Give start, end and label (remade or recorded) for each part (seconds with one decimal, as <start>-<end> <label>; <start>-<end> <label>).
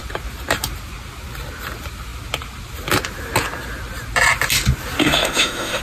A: 0.0-5.0 recorded; 5.0-5.8 remade